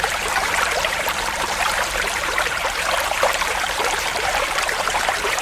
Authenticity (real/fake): fake